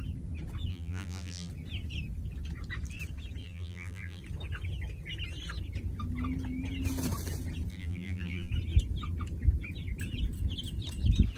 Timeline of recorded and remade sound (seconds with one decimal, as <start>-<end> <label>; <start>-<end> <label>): 0.0-0.7 recorded; 0.7-1.5 remade; 1.5-3.4 recorded; 3.4-4.2 remade; 4.2-7.7 recorded; 7.7-8.5 remade; 8.5-11.4 recorded